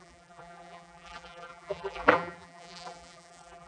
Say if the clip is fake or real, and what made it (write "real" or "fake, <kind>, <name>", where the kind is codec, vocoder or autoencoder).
fake, vocoder, BigVGAN v2